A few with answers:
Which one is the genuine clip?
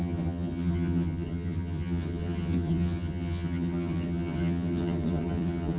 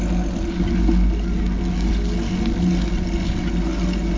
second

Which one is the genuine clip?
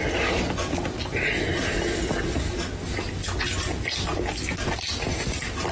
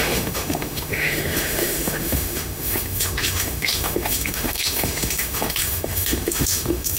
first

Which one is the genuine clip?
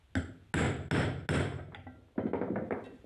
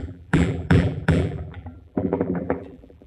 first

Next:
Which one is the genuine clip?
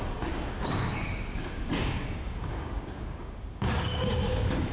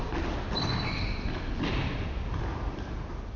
second